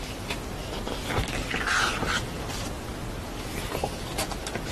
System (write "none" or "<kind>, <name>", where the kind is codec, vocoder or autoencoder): none